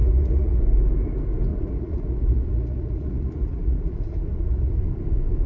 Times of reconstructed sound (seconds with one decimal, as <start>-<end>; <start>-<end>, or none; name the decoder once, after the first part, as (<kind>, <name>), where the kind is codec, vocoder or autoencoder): 0.0-0.6 (vocoder, Vocos); 1.5-4.8